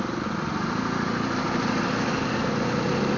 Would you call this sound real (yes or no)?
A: yes